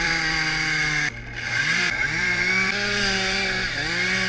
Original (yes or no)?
no